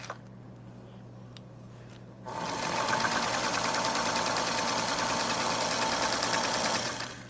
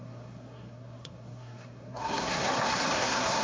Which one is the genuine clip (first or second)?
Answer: first